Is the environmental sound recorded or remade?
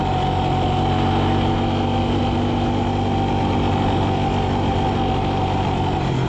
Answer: recorded